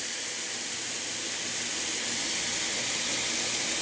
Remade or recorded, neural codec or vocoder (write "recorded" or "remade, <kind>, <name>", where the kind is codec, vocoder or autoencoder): recorded